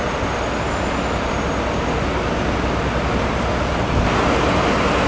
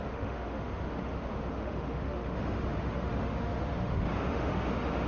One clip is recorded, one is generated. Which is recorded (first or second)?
first